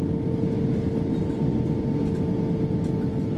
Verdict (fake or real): real